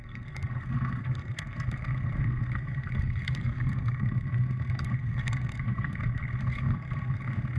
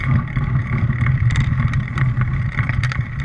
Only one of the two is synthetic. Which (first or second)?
first